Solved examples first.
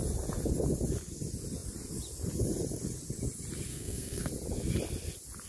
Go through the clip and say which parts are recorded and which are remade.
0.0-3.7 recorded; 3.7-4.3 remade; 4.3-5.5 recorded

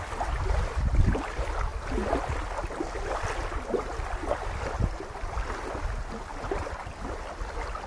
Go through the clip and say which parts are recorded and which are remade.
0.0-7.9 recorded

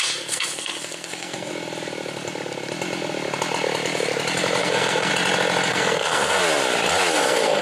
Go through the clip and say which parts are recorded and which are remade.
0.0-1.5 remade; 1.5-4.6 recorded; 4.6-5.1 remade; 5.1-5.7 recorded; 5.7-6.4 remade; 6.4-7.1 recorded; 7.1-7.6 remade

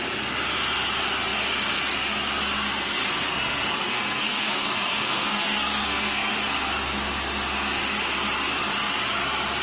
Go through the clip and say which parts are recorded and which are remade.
0.0-3.0 recorded; 3.0-6.3 remade; 6.3-9.6 recorded

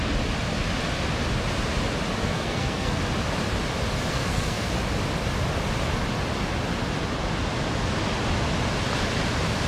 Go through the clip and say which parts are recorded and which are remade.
0.0-2.2 recorded; 2.2-3.0 remade; 3.0-4.1 recorded; 4.1-4.7 remade; 4.7-9.7 recorded